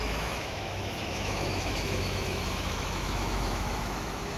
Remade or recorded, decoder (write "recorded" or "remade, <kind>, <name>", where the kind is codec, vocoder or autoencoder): remade, autoencoder, DAC-VAE